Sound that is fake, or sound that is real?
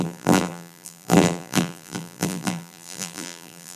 fake